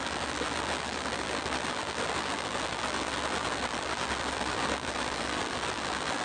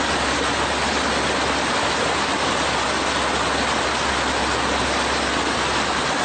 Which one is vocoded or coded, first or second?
first